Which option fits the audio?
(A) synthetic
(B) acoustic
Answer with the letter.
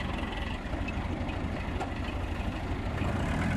B